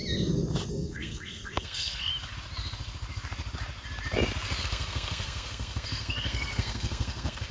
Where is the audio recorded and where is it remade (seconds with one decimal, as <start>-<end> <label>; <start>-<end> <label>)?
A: 0.0-0.7 recorded; 0.7-2.1 remade; 2.1-4.6 recorded; 4.6-7.5 remade